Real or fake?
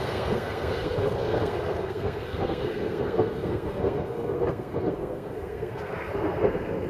fake